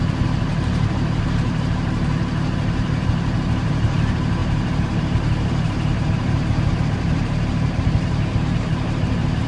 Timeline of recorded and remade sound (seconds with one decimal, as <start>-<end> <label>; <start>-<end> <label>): 0.0-9.5 remade